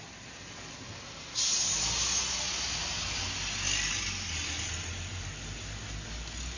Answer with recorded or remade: recorded